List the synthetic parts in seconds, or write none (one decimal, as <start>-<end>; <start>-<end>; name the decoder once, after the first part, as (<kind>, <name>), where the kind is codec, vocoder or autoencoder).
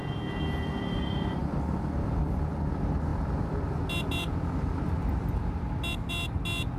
none